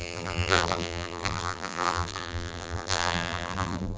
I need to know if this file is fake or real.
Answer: fake